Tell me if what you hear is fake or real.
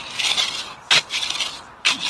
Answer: real